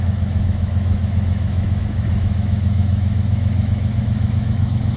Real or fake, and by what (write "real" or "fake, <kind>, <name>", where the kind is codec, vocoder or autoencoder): fake, autoencoder, DAC-VAE